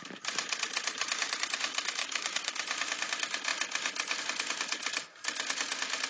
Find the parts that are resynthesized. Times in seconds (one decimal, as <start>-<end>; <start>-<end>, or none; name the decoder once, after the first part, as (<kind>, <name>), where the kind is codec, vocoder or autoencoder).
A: 2.0-2.5 (codec, DAC)